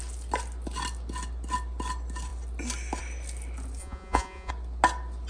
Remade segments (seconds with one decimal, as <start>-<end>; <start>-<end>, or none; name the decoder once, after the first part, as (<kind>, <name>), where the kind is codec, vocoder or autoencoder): 3.8-4.5 (vocoder, Vocos)